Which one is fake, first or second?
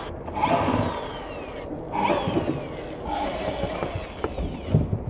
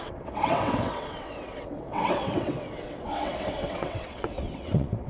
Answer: second